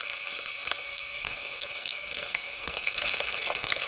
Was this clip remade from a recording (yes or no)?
yes